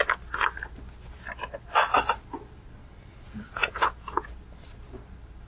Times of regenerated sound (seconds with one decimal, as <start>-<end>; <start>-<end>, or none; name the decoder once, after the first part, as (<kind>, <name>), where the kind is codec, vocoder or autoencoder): 3.6-4.3 (vocoder, Vocos)